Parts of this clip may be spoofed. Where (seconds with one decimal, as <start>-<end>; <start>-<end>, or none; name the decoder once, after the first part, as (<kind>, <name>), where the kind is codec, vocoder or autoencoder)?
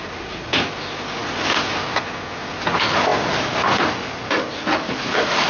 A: none